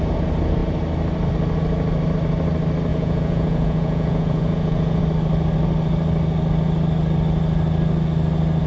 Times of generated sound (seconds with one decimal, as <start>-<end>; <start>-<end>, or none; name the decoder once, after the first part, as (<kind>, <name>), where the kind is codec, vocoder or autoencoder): 2.9-5.0 (vocoder, Vocos)